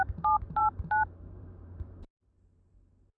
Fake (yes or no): yes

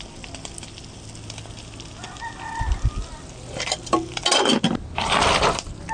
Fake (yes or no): no